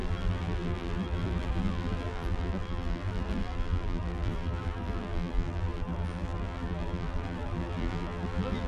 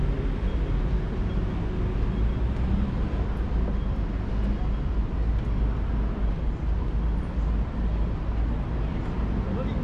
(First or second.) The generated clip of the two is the first